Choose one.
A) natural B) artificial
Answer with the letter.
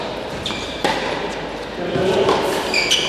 A